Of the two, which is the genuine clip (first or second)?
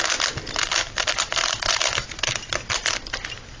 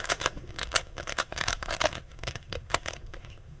first